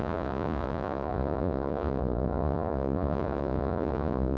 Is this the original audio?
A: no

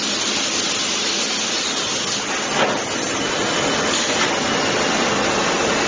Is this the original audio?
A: yes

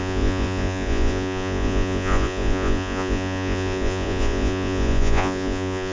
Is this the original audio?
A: no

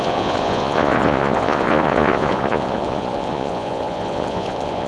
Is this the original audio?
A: no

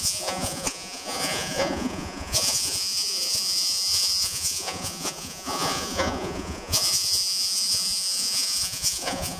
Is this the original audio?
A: no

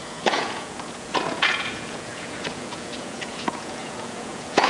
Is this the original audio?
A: no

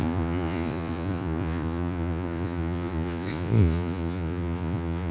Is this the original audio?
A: no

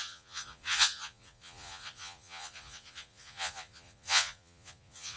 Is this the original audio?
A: no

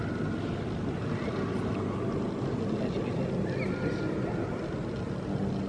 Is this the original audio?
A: yes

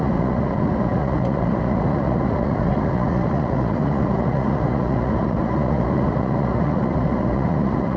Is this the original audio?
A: no